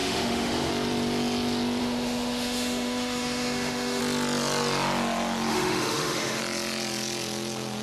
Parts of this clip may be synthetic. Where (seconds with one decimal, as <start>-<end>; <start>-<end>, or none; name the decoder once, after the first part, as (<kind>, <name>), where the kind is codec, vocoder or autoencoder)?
0.0-0.7 (autoencoder, DAC-VAE); 1.8-4.0; 5.5-6.4